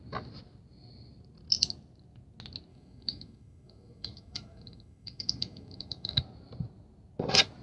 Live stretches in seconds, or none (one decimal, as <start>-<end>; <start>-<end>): 0.0-2.7; 6.2-7.6